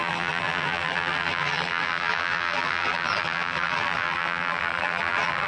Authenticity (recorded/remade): remade